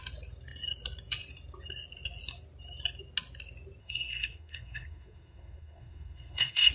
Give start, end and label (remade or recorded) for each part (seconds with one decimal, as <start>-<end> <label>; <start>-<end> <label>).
0.0-3.8 recorded; 3.8-6.7 remade